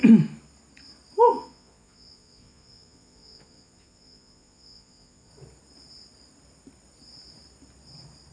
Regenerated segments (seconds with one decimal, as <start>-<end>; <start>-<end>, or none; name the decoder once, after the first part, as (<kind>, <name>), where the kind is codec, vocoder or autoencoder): 1.3-5.3 (vocoder, Vocos)